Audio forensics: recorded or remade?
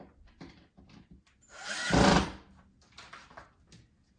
recorded